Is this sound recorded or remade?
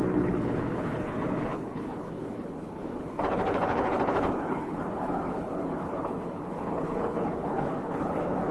remade